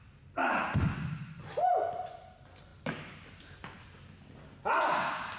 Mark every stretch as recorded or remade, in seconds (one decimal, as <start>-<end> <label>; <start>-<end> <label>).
0.0-5.4 recorded